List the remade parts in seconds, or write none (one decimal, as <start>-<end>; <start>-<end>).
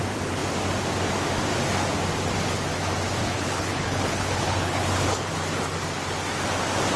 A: 3.2-5.3